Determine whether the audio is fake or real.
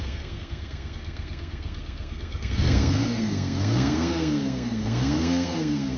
fake